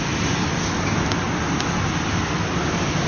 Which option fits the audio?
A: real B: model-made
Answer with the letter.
A